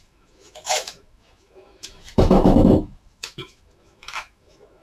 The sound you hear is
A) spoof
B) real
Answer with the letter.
A